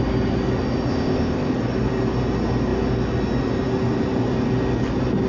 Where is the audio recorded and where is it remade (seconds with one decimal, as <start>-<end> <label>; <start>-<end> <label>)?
0.0-0.9 recorded; 0.9-1.5 remade; 1.5-5.3 recorded